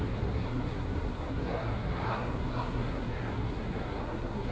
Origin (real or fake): fake